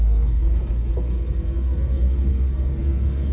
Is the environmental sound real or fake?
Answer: fake